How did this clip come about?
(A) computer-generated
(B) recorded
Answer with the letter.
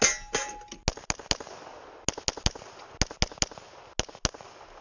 B